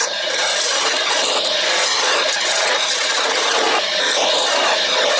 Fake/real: real